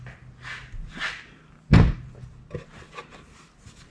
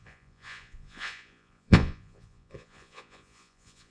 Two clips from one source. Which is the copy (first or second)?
second